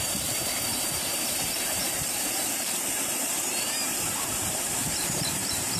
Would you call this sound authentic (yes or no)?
no